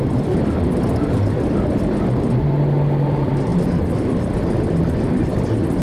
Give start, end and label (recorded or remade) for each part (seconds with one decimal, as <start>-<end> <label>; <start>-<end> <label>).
0.0-5.8 recorded

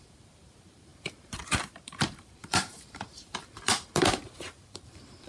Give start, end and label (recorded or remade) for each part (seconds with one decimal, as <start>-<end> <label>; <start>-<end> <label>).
0.0-5.3 remade

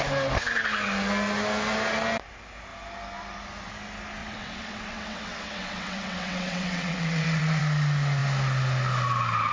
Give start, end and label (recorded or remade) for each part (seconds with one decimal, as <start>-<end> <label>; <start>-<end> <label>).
0.0-4.2 recorded; 4.2-7.6 remade; 7.6-9.5 recorded

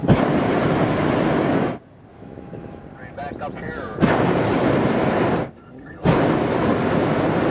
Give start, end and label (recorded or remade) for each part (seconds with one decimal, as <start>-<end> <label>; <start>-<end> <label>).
0.0-2.1 recorded; 2.1-2.8 remade; 2.8-7.5 recorded

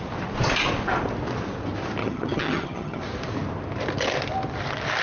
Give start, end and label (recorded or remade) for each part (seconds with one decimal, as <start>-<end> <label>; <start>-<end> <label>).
0.0-2.0 recorded; 2.0-3.0 remade; 3.0-5.0 recorded

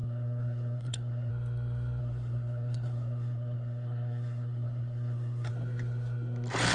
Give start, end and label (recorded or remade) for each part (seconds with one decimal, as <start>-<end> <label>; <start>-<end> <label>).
0.0-1.3 remade; 1.3-2.0 recorded; 2.0-5.5 remade; 5.5-6.7 recorded

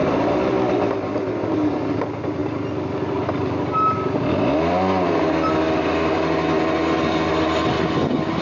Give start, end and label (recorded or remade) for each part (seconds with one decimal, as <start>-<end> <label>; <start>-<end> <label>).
0.0-8.4 recorded

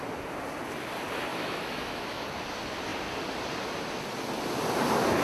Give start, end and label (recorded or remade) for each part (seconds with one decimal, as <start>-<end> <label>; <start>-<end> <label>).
0.0-1.3 recorded; 1.3-2.2 remade; 2.2-5.2 recorded